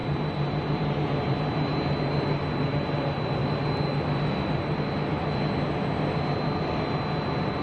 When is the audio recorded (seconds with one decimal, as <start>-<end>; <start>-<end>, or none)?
2.1-7.6